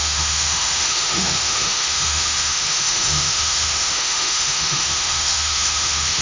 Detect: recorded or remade remade